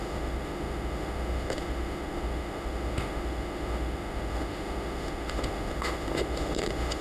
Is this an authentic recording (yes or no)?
no